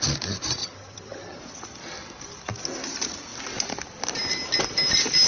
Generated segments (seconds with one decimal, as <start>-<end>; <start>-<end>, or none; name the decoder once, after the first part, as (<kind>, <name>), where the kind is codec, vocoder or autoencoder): 0.6-1.4 (vocoder, HiFi-GAN)